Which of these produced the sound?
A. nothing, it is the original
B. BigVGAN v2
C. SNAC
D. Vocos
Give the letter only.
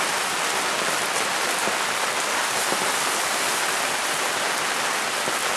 A